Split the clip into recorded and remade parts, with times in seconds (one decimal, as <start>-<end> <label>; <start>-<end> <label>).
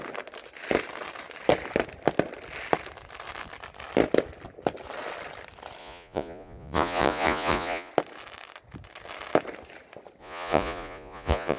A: 0.0-5.8 recorded; 5.8-7.9 remade; 7.9-10.2 recorded; 10.2-11.6 remade